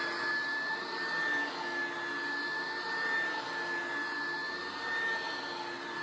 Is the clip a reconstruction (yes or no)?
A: no